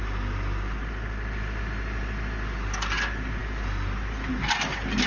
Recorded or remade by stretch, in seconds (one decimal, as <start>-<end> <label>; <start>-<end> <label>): 0.0-5.1 recorded